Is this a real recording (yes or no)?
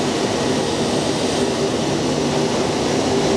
yes